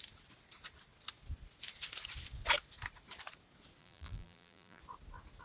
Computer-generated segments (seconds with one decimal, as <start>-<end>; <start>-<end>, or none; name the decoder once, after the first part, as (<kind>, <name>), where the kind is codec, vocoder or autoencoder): 3.8-4.8 (vocoder, BigVGAN v2)